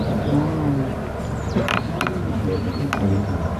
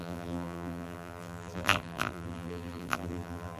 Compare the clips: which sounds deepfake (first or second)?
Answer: second